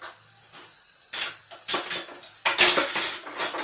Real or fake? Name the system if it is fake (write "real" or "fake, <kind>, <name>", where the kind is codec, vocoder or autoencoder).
real